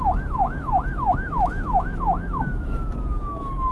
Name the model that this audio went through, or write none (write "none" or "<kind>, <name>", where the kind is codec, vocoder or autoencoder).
autoencoder, DAC-VAE